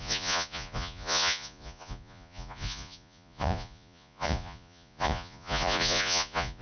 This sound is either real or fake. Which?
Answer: fake